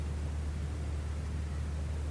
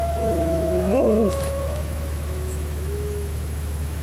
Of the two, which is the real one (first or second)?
first